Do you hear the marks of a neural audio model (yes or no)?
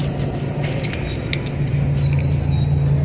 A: no